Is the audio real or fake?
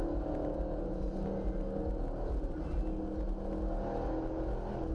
real